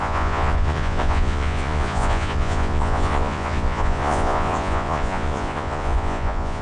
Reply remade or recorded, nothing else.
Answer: remade